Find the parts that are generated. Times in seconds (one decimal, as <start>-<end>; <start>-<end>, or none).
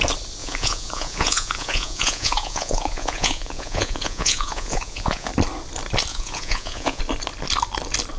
0.4-5.3; 6.1-7.0